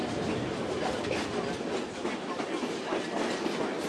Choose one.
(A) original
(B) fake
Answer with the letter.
A